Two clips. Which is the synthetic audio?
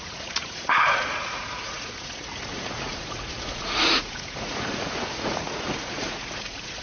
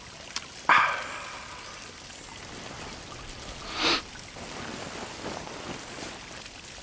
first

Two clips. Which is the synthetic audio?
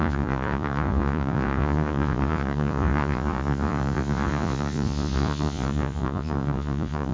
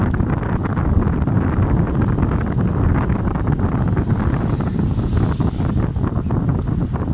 first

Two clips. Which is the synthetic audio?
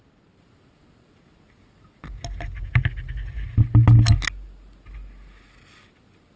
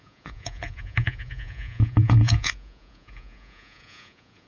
second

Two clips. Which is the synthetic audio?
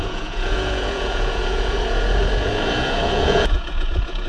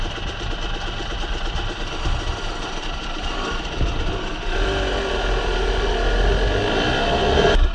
first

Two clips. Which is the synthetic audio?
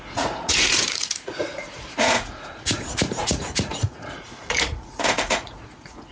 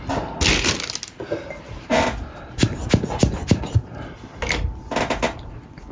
first